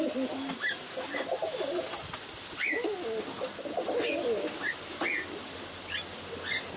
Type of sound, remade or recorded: recorded